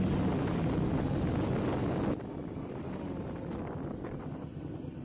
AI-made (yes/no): no